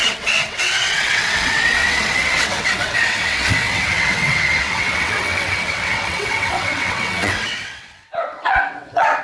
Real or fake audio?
fake